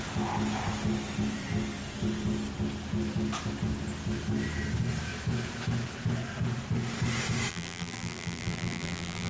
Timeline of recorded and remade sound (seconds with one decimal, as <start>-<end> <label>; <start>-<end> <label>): 0.0-7.5 recorded; 7.5-9.3 remade